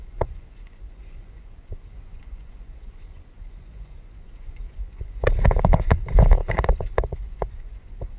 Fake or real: fake